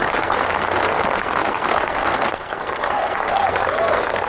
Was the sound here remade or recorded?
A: remade